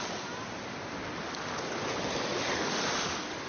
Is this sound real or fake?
real